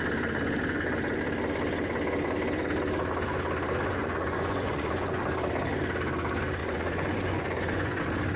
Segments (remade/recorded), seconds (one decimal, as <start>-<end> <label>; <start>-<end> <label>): 0.0-3.9 recorded; 3.9-5.2 remade; 5.2-6.6 recorded; 6.6-8.0 remade; 8.0-8.4 recorded